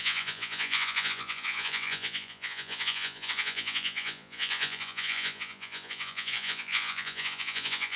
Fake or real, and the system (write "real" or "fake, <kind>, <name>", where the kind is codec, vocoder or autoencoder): fake, vocoder, Vocos